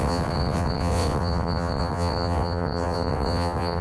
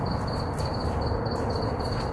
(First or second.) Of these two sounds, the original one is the second